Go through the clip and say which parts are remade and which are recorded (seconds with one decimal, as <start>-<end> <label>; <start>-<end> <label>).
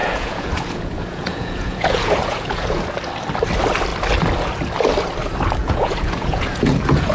0.0-2.8 remade; 2.8-5.6 recorded; 5.6-7.1 remade